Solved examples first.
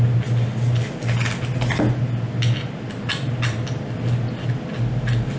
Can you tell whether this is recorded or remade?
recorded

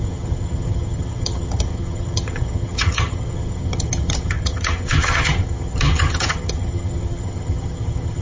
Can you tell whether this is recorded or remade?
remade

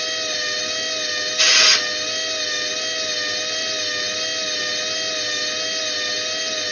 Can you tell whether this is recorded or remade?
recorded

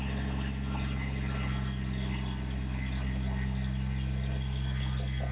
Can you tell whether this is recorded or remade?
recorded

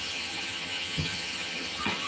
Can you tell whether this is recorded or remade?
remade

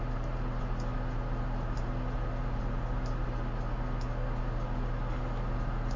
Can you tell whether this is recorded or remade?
recorded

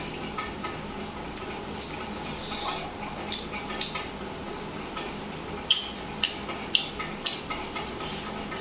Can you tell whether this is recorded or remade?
recorded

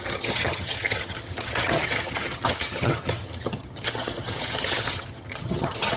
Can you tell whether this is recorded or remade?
remade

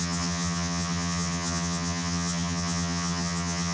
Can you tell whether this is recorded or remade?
remade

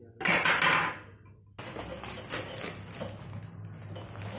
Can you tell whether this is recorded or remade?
recorded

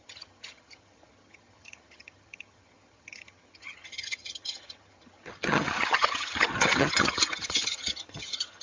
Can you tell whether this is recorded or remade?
remade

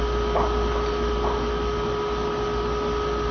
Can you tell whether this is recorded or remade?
recorded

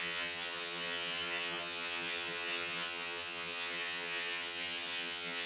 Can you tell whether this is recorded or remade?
remade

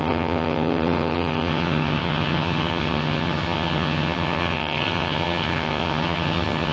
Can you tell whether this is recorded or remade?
remade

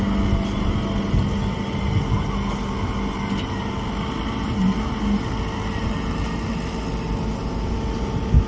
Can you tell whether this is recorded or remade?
recorded